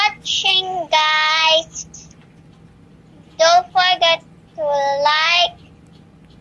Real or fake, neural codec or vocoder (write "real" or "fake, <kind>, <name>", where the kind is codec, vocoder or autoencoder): real